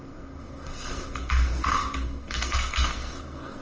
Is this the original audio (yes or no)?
no